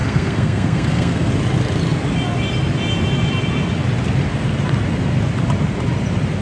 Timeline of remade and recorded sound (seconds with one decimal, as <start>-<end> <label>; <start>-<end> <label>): 0.0-1.3 remade; 1.3-6.4 recorded

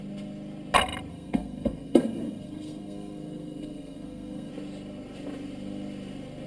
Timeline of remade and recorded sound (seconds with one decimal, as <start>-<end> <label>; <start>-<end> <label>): 0.0-1.1 recorded; 1.1-4.5 remade; 4.5-6.5 recorded

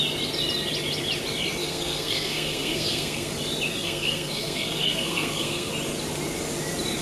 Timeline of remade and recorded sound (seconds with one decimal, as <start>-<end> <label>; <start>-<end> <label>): 0.0-1.6 recorded; 1.6-3.3 remade; 3.3-3.7 recorded; 3.7-5.7 remade; 5.7-7.0 recorded